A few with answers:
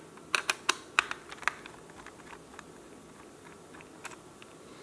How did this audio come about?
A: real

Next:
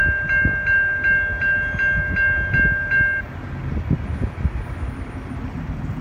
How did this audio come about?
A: real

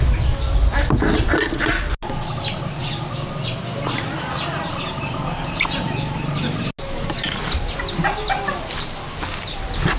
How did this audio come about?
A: real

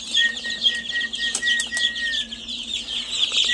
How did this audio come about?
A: real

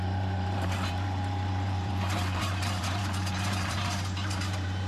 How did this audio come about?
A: fake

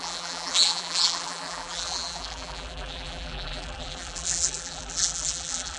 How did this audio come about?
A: fake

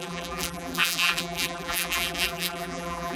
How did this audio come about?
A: fake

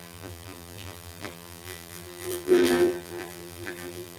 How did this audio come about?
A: fake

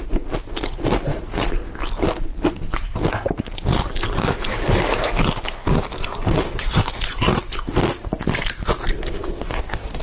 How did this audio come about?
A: real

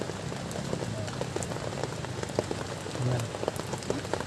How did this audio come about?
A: real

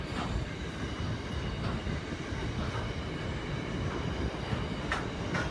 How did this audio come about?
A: fake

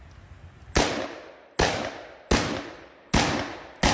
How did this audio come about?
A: real